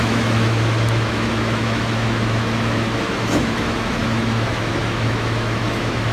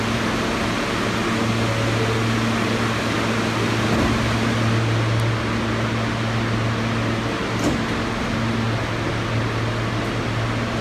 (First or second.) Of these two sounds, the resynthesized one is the first